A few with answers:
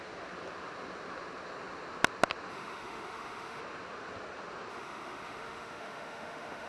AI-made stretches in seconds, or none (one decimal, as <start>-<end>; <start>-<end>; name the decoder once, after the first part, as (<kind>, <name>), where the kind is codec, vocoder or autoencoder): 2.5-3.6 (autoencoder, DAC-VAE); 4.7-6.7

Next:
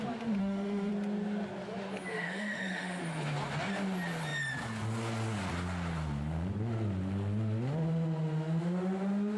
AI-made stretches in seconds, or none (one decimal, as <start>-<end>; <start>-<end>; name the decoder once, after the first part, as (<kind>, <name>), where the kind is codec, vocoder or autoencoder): 0.4-0.9 (autoencoder, DAC-VAE); 2.1-3.0

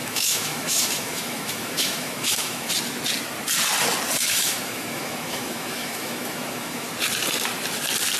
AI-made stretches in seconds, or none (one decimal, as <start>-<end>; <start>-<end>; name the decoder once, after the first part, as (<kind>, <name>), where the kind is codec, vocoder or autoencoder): 0.0-2.7 (autoencoder, DAC-VAE); 4.2-6.9

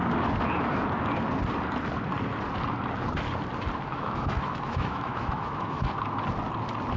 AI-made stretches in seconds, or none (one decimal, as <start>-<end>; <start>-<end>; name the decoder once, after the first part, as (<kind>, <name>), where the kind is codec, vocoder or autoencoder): 3.9-5.9 (autoencoder, DAC-VAE)

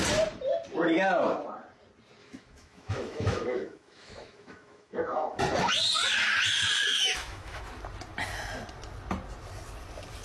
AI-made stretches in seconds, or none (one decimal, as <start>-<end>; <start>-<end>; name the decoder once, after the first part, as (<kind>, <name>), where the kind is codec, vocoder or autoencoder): 2.2-5.4 (autoencoder, DAC-VAE); 6.9-7.6

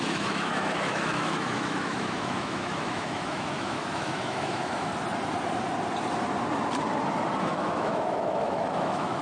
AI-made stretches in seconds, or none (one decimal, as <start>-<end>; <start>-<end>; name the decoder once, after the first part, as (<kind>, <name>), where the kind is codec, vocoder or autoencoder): 0.0-4.9 (autoencoder, DAC-VAE); 7.4-9.2